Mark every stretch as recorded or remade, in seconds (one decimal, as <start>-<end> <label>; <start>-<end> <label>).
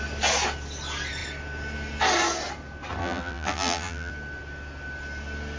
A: 0.0-3.0 recorded; 3.0-4.1 remade; 4.1-5.6 recorded